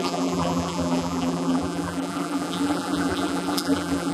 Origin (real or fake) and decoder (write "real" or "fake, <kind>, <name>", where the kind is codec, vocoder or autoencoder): fake, vocoder, BigVGAN v2